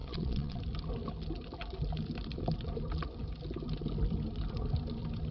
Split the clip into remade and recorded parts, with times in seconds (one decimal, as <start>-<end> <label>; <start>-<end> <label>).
0.0-0.6 remade; 0.6-5.3 recorded